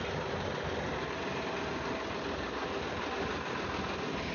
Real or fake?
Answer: real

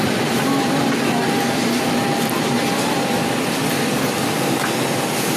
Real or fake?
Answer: real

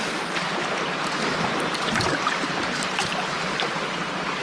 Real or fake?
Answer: fake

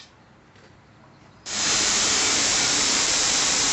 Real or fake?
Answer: fake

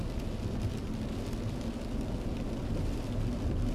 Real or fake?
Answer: real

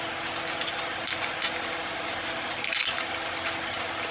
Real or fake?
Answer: real